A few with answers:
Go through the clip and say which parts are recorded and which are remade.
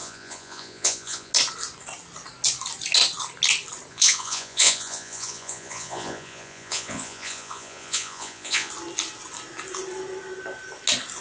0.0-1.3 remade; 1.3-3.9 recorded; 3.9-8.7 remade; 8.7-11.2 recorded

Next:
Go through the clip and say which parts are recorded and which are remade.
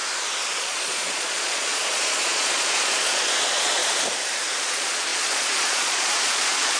0.0-0.6 recorded; 0.6-3.8 remade; 3.8-4.6 recorded; 4.6-6.8 remade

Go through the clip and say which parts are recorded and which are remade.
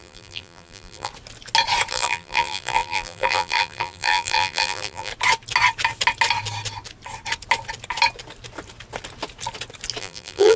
0.0-1.1 remade; 1.1-1.9 recorded; 1.9-5.1 remade; 5.1-10.0 recorded; 10.0-10.6 remade